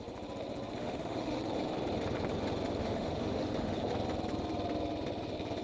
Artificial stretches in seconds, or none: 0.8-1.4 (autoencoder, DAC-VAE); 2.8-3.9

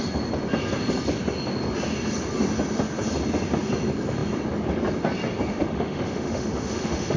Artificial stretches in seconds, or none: 5.5-7.2 (autoencoder, DAC-VAE)

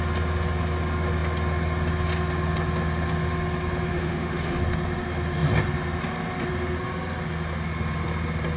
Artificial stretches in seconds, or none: 3.9-4.6 (autoencoder, DAC-VAE)

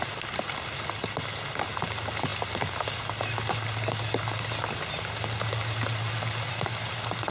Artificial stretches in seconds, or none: none

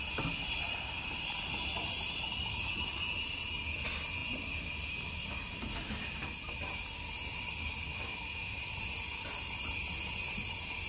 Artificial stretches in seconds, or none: 7.9-8.6 (autoencoder, DAC-VAE)

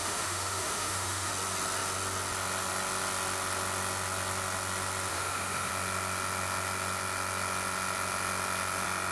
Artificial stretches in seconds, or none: 0.0-1.3 (autoencoder, DAC-VAE); 5.1-5.7

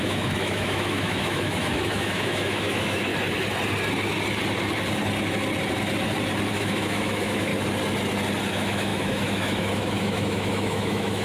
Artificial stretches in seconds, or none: 0.0-3.1 (autoencoder, DAC-VAE); 6.5-7.5; 8.5-11.2

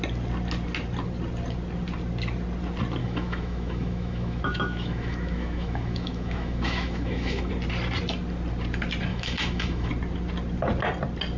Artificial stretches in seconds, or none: 3.0-7.5 (autoencoder, DAC-VAE); 9.1-9.9